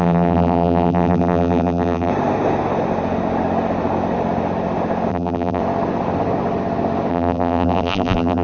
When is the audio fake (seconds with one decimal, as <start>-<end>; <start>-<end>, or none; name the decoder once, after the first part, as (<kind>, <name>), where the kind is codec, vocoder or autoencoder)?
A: 0.0-2.1 (vocoder, BigVGAN v2); 5.1-5.6; 7.1-8.4